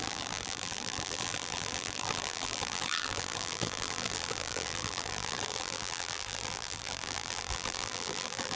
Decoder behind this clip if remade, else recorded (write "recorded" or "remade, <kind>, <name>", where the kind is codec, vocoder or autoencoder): remade, vocoder, BigVGAN v2